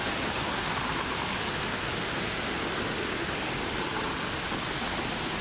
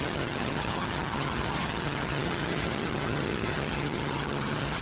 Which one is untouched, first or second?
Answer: first